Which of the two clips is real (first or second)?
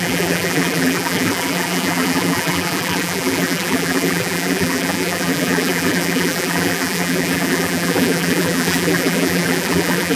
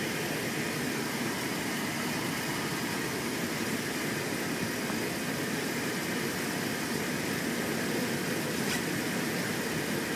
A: second